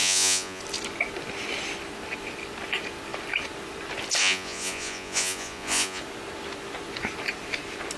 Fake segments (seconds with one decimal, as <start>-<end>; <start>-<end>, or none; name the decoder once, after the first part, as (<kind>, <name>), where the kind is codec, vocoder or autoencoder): 0.0-0.6 (vocoder, Vocos); 4.2-6.0

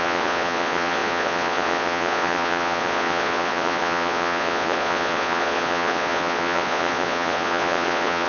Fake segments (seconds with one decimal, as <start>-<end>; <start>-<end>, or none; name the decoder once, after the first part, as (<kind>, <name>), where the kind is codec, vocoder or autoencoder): 0.0-8.3 (vocoder, Vocos)

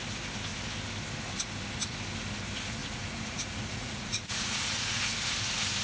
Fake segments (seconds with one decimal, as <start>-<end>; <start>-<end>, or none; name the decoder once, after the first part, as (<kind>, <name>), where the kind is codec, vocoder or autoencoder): 2.8-5.0 (vocoder, Vocos)